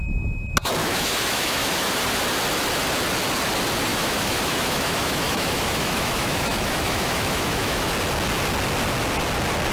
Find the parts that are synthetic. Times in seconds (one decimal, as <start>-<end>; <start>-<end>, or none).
0.8-1.9; 3.9-7.9